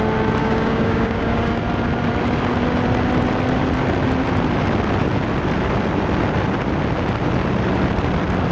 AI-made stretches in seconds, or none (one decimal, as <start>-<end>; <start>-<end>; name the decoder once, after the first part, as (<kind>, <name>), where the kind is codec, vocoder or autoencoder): 0.4-1.5 (codec, DAC)